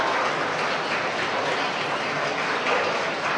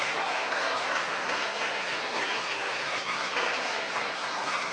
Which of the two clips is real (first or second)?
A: first